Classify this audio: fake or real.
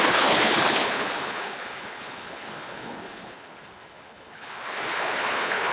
fake